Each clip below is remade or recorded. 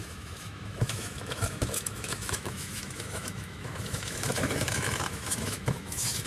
remade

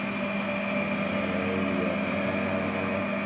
recorded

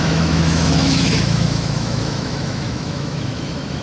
remade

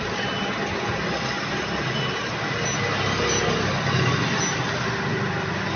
recorded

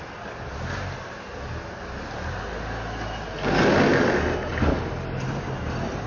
recorded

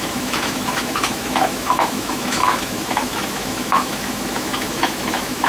remade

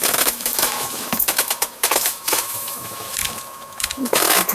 remade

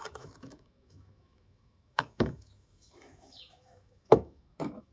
remade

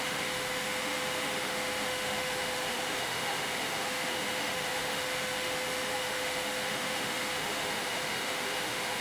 remade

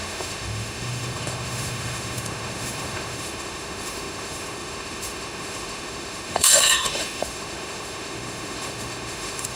remade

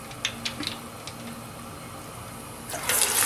recorded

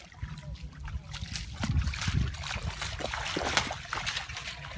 recorded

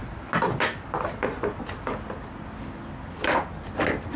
recorded